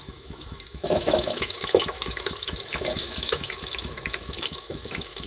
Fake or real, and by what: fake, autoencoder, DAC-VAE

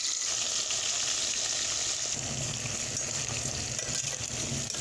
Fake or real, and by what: real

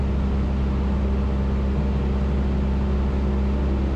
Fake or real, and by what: real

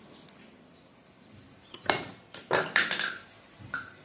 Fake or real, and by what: real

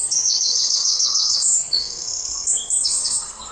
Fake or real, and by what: fake, codec, SNAC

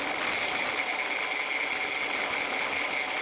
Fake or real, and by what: fake, vocoder, BigVGAN v2